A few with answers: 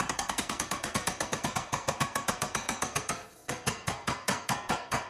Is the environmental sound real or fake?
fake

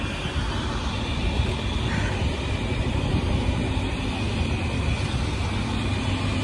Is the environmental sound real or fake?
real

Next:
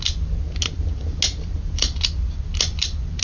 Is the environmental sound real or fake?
real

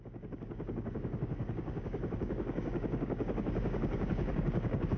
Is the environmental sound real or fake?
fake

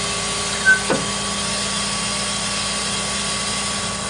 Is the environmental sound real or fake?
real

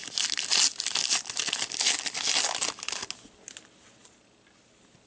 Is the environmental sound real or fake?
real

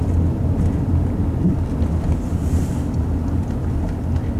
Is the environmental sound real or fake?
real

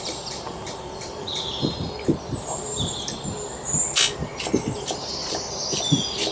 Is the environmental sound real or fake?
real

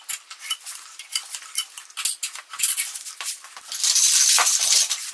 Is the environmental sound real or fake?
real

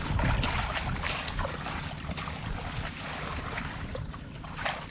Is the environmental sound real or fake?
real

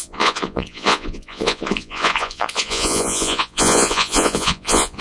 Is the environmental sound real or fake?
fake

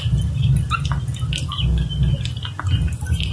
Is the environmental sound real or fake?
real